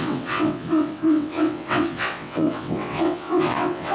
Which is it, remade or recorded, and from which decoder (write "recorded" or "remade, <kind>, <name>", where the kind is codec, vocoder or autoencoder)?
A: remade, vocoder, WaveNeXt